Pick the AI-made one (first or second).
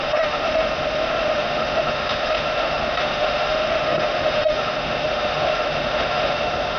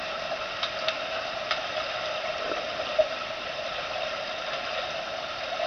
first